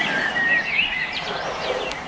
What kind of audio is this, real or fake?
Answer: fake